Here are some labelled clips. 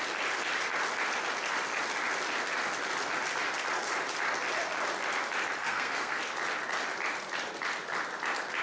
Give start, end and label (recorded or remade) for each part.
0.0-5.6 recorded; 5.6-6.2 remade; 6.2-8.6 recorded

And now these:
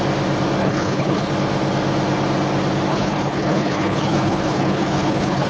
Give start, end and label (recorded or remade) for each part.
0.0-0.6 recorded; 0.6-1.3 remade; 1.3-2.9 recorded; 2.9-5.5 remade

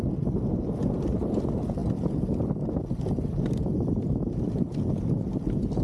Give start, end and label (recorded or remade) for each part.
0.0-5.8 recorded

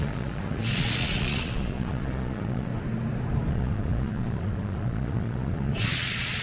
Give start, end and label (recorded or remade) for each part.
0.0-2.7 remade; 2.7-3.5 recorded; 3.5-6.4 remade

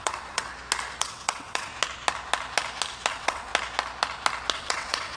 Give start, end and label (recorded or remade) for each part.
0.0-0.5 remade; 0.5-1.0 recorded; 1.0-1.7 remade; 1.7-3.1 recorded; 3.1-3.5 remade; 3.5-4.5 recorded; 4.5-5.2 remade

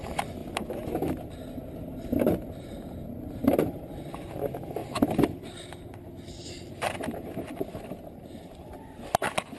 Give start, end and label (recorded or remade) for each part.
0.0-9.6 recorded

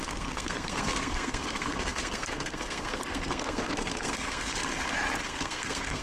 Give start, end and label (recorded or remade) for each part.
0.0-4.7 remade; 4.7-5.2 recorded; 5.2-6.0 remade

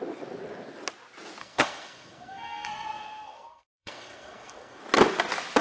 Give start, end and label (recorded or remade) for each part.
0.0-1.4 recorded; 1.4-4.8 remade; 4.8-5.6 recorded